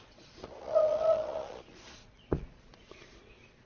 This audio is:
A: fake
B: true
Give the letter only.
A